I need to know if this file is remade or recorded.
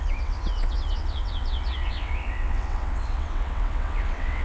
remade